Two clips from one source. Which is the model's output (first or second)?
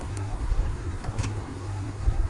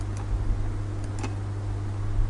first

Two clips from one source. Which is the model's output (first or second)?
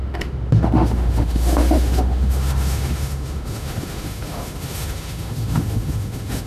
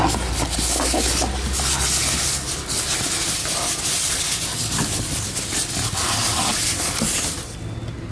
first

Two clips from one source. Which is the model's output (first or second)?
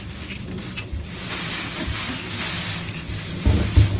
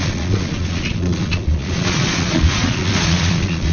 second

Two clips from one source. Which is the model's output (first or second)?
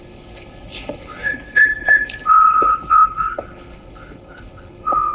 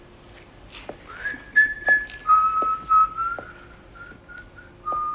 first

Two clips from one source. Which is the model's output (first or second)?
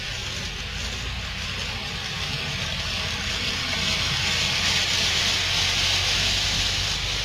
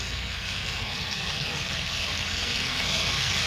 second